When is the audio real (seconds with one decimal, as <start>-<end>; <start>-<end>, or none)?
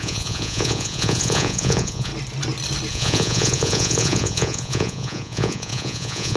2.1-2.9